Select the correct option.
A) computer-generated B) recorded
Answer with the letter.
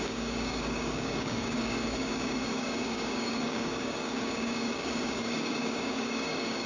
A